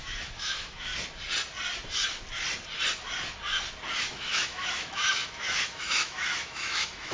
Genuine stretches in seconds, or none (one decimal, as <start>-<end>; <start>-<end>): 0.9-4.0